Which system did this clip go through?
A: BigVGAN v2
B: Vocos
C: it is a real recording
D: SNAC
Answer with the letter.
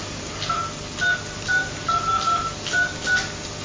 C